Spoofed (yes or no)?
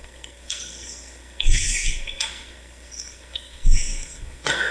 yes